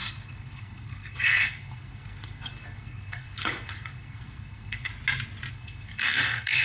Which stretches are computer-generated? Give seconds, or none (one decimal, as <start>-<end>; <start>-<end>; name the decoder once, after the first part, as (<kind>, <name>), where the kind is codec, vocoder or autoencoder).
0.0-4.9 (codec, SNAC); 5.5-6.6